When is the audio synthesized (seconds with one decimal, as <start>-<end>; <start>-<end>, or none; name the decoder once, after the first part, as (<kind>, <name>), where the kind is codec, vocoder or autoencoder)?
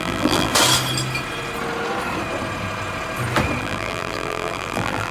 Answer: 0.0-0.5 (vocoder, BigVGAN v2); 3.6-5.1